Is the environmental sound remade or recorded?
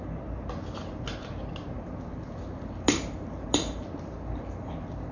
recorded